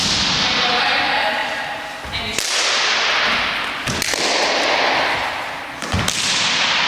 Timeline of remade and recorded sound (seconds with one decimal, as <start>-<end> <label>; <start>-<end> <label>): 0.0-6.9 recorded